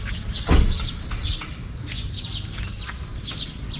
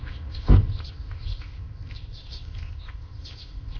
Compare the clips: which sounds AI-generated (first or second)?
second